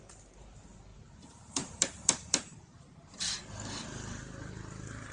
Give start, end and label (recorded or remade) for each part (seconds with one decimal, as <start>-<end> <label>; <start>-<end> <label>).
0.0-0.9 recorded; 0.9-3.5 remade; 3.5-5.1 recorded

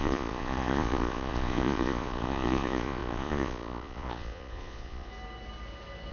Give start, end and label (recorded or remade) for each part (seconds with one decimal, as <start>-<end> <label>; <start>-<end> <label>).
0.0-5.1 remade; 5.1-6.1 recorded

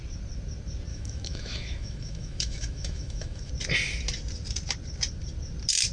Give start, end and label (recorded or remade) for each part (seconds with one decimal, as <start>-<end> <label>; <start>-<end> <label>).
0.0-0.9 recorded; 0.9-3.5 remade; 3.5-5.9 recorded